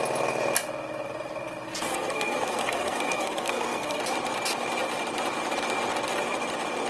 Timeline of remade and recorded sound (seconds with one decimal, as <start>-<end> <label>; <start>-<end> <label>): 0.0-1.9 recorded; 1.9-4.0 remade; 4.0-6.9 recorded

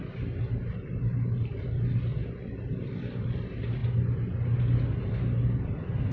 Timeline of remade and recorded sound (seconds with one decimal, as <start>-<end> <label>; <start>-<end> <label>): 0.0-6.1 recorded

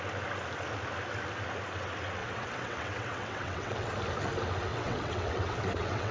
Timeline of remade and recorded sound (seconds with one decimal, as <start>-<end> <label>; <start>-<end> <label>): 0.0-2.2 recorded; 2.2-3.9 remade; 3.9-4.7 recorded; 4.7-6.1 remade

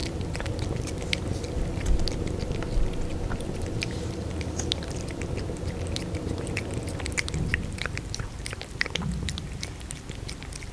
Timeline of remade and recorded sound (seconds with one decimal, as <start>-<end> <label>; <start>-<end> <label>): 0.0-10.7 recorded

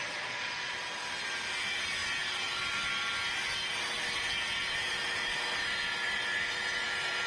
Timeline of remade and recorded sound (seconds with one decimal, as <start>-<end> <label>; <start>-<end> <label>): 0.0-0.7 remade; 0.7-7.3 recorded

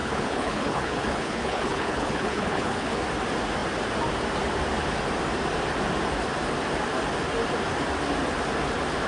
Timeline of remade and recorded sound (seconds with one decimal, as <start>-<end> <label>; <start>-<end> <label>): 0.0-3.0 remade; 3.0-9.1 recorded

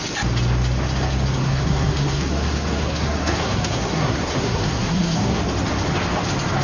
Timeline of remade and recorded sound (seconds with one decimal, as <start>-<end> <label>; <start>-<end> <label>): 0.0-1.4 recorded; 1.4-5.4 remade; 5.4-6.6 recorded